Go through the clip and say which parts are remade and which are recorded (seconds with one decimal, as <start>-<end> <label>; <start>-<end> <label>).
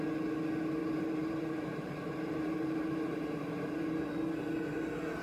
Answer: 0.0-0.8 recorded; 0.8-3.9 remade; 3.9-5.2 recorded